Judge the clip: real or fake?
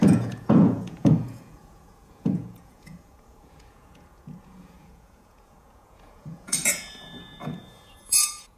fake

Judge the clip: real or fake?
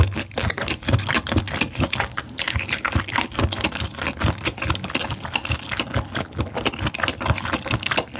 real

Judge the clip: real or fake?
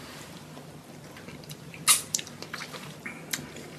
real